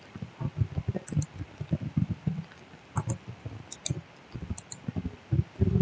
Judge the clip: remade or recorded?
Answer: recorded